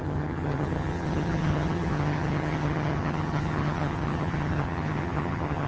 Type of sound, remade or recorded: remade